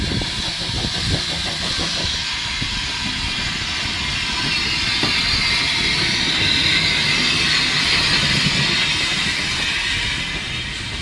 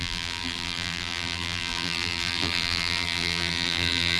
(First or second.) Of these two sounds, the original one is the first